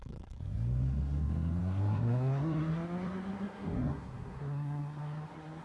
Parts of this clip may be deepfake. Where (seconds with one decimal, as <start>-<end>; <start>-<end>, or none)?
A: 0.0-5.6